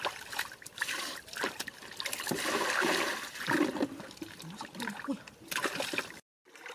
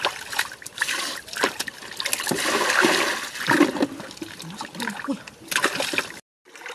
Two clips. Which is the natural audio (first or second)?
second